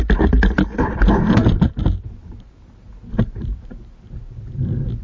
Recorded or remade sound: recorded